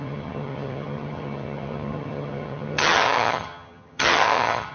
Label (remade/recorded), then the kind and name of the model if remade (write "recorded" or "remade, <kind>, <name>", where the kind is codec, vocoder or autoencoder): remade, vocoder, HiFi-GAN